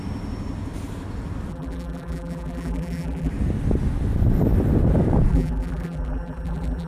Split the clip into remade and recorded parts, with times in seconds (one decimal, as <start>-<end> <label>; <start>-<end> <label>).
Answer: 0.0-1.5 recorded; 1.5-3.3 remade; 3.3-5.3 recorded; 5.3-6.9 remade